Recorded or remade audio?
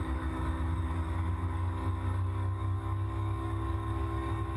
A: remade